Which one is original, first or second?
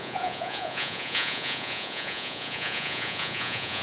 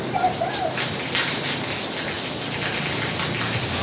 second